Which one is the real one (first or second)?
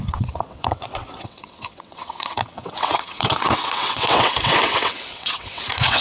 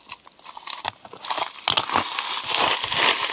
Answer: second